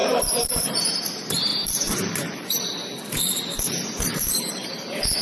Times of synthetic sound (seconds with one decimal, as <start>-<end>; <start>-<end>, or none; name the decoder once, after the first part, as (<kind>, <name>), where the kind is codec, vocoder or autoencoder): 0.0-5.2 (vocoder, BigVGAN v2)